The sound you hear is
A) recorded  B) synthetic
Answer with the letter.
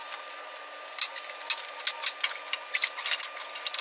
A